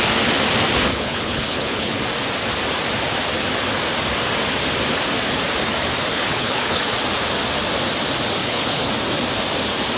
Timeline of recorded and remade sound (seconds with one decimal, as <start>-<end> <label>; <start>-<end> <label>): 0.0-0.9 recorded; 0.9-1.9 remade; 1.9-6.1 recorded; 6.1-6.9 remade; 6.9-8.4 recorded; 8.4-8.9 remade; 8.9-10.0 recorded